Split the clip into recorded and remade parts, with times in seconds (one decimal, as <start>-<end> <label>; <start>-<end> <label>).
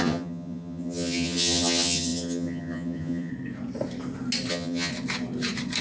0.0-3.3 remade; 3.3-4.5 recorded; 4.5-4.9 remade; 4.9-5.8 recorded